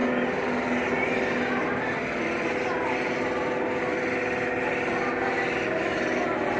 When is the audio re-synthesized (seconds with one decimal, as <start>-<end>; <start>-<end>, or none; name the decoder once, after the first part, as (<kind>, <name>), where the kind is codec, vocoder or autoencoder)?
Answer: none